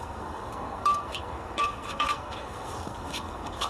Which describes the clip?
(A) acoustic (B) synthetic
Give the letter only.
B